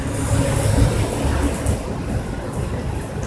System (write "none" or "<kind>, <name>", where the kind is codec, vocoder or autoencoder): none